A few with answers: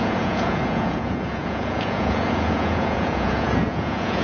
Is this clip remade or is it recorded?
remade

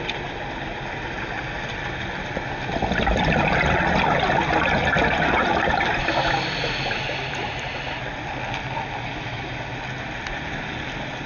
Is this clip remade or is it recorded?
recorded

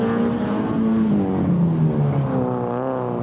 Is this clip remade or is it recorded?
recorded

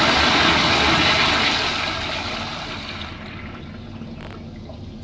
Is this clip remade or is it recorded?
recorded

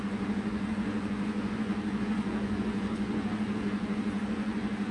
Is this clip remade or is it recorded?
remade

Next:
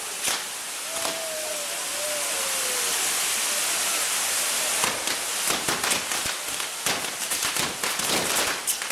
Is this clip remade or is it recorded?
recorded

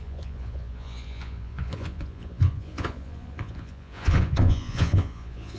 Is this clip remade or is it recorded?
remade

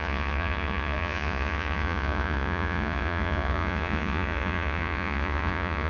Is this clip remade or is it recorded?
remade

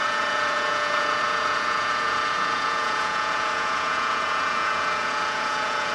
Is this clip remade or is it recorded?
remade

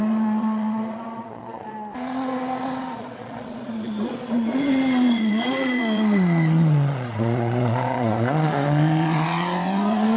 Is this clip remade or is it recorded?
remade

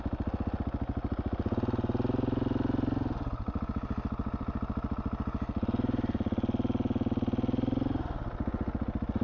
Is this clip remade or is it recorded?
recorded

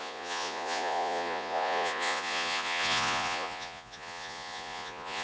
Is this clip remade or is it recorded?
remade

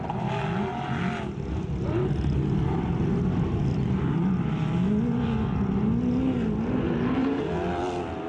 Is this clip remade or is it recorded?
recorded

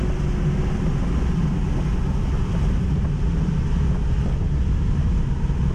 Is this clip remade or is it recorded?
recorded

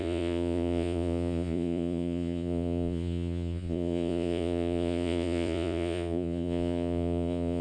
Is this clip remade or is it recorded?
remade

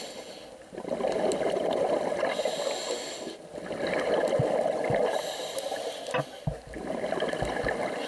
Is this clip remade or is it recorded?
recorded